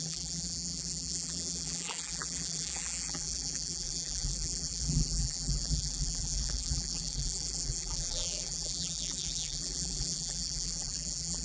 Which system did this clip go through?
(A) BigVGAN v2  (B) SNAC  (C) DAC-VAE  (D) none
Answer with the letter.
A